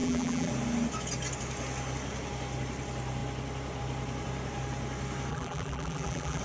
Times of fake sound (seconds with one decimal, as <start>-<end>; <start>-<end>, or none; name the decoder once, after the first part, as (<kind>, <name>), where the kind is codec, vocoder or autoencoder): 0.0-0.5 (vocoder, BigVGAN v2); 5.3-6.4